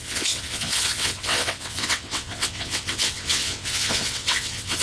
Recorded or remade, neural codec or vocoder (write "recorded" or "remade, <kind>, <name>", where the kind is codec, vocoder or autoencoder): remade, vocoder, WaveNeXt